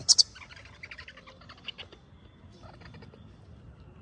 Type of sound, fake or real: real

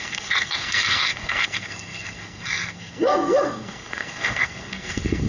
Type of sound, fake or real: fake